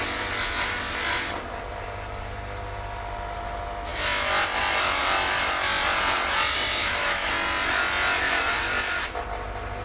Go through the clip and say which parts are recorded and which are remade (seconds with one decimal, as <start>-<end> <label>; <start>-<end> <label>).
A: 0.0-6.8 recorded; 6.8-7.3 remade; 7.3-9.8 recorded